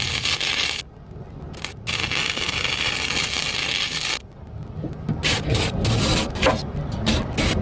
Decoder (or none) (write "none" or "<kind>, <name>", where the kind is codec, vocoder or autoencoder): none